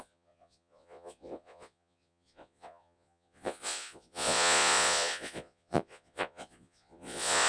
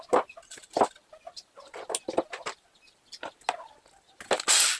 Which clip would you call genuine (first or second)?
second